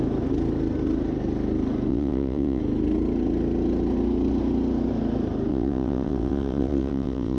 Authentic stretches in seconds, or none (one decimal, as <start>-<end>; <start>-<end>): 0.0-1.9; 2.6-5.5